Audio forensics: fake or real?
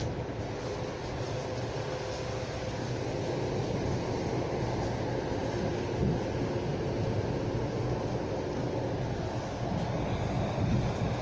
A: real